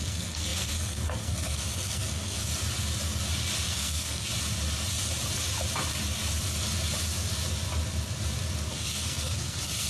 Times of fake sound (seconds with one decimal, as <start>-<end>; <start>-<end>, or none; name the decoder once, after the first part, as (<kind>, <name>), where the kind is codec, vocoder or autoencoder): 0.0-2.5 (codec, SNAC); 3.7-4.3; 8.7-9.9